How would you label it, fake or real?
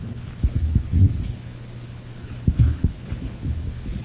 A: fake